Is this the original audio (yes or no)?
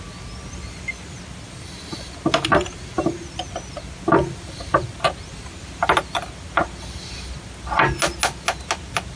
yes